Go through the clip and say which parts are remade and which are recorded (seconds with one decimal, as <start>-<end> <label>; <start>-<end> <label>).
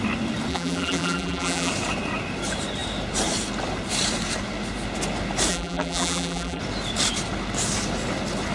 0.0-0.5 recorded; 0.5-1.7 remade; 1.7-5.5 recorded; 5.5-6.6 remade; 6.6-8.5 recorded